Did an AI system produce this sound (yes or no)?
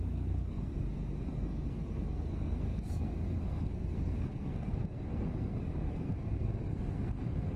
yes